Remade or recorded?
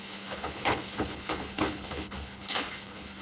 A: remade